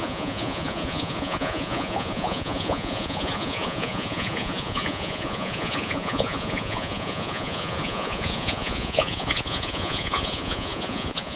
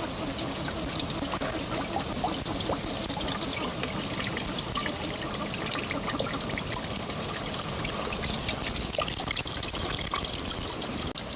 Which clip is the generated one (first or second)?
first